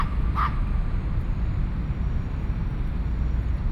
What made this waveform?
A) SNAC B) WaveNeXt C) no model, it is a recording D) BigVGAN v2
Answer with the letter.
C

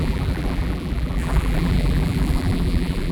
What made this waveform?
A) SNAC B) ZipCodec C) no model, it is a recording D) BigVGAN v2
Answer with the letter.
D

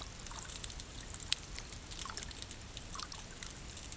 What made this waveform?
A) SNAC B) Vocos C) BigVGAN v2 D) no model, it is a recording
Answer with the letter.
D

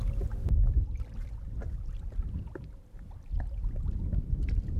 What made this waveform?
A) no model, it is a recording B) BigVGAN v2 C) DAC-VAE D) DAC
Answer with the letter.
A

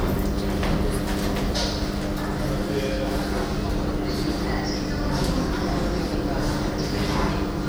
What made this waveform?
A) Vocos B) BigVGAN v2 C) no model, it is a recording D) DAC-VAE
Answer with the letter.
C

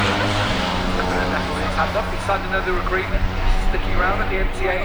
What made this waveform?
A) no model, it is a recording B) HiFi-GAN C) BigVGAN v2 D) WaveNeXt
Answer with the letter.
C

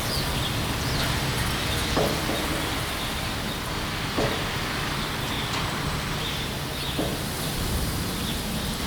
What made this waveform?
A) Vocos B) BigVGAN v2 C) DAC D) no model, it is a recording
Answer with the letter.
D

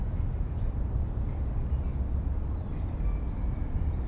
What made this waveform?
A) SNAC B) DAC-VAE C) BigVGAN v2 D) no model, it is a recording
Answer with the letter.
D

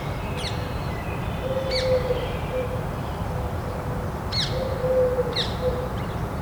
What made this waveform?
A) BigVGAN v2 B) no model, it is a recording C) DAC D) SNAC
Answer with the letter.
A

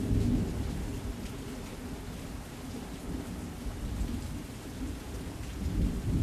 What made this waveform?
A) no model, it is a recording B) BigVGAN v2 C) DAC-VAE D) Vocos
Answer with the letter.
A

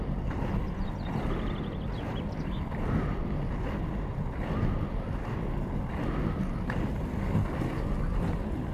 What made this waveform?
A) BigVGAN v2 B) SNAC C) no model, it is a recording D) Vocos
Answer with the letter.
C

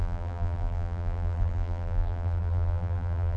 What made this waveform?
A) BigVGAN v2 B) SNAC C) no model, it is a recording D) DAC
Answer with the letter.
A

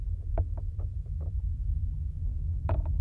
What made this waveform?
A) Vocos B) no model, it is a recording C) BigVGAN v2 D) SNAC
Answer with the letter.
B